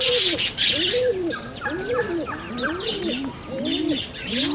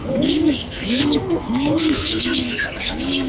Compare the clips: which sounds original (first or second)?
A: first